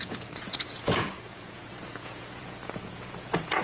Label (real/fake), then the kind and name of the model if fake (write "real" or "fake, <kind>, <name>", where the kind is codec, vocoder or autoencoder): fake, vocoder, Vocos